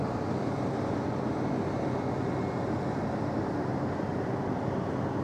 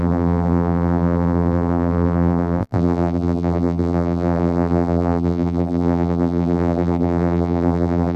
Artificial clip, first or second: second